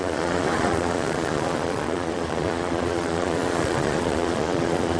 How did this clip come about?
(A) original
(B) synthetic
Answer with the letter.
B